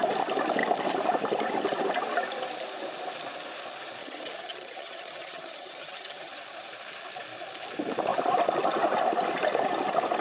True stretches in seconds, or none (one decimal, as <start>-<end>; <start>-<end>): 0.0-4.0; 6.3-10.2